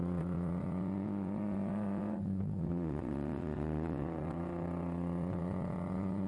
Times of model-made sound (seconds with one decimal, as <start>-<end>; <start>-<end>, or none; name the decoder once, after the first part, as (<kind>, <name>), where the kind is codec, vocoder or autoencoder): 0.0-6.3 (vocoder, WaveNeXt)